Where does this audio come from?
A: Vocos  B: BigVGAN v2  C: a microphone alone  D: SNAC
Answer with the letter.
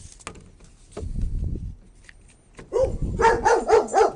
C